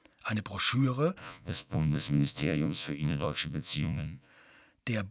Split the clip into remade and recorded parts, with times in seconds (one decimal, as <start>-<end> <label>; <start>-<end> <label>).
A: 0.0-1.2 recorded; 1.2-4.3 remade; 4.3-5.1 recorded